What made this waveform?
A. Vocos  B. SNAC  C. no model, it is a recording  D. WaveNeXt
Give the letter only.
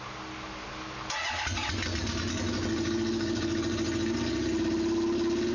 C